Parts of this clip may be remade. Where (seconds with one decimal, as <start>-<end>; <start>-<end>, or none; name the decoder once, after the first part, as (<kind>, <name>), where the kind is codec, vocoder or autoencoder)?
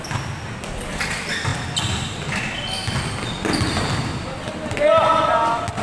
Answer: none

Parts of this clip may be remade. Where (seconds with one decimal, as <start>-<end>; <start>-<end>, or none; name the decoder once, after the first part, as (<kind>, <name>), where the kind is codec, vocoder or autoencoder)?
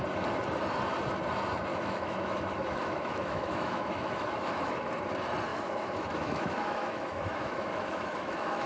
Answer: 1.7-4.8 (autoencoder, DAC-VAE); 5.5-8.7